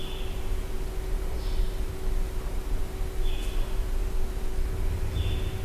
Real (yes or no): yes